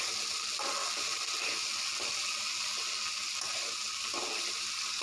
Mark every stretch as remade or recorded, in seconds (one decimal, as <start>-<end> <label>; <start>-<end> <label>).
0.0-5.0 recorded